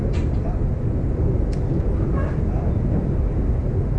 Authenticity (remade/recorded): recorded